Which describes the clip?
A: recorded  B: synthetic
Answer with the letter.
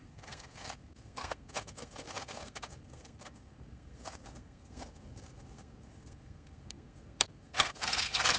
B